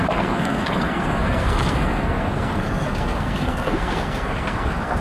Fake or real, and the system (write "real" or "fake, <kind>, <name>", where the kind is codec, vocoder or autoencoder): fake, codec, SNAC